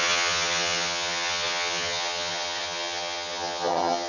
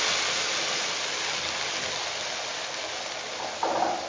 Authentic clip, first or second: second